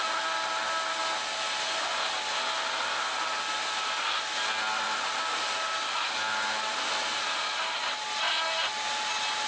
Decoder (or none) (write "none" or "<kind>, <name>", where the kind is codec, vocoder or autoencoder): none